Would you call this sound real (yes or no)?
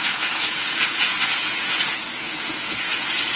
no